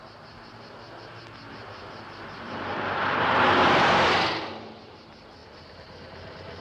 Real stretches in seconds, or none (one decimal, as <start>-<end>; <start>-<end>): 0.0-1.6; 4.5-5.4